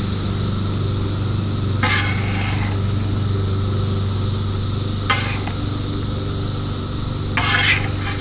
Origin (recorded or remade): recorded